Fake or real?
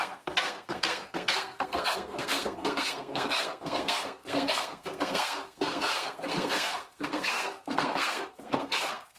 fake